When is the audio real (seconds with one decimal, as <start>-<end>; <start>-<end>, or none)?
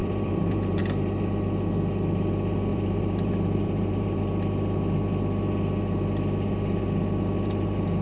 0.8-2.7; 4.2-8.0